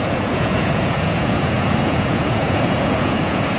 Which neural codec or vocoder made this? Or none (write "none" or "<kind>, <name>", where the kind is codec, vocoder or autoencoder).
vocoder, Vocos